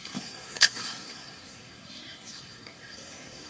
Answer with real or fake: fake